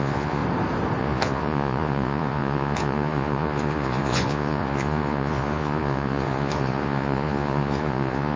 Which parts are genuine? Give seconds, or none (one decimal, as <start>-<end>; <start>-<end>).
0.4-1.0